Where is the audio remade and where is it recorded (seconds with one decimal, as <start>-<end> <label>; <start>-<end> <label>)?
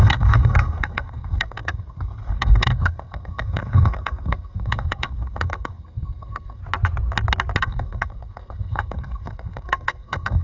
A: 0.0-6.6 remade; 6.6-7.6 recorded; 7.6-10.4 remade